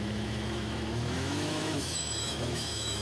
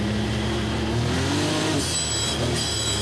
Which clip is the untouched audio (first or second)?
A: second